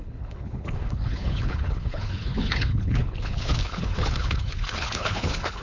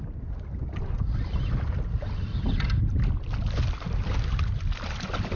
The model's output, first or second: first